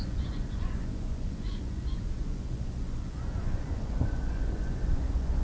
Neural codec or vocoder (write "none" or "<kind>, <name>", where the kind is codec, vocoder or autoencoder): vocoder, Vocos